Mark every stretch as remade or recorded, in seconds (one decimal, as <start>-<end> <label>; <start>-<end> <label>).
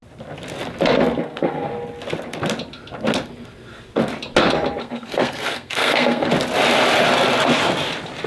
0.0-1.2 recorded; 1.2-1.7 remade; 1.7-4.8 recorded; 4.8-6.3 remade; 6.3-8.3 recorded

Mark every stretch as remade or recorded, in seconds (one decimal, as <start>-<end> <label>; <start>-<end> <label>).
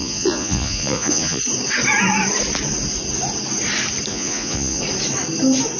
0.0-1.4 remade; 1.4-4.1 recorded; 4.1-4.8 remade; 4.8-5.8 recorded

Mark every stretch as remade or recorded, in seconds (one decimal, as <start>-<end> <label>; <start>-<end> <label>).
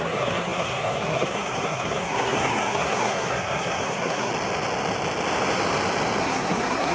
0.0-4.3 remade; 4.3-6.2 recorded; 6.2-6.9 remade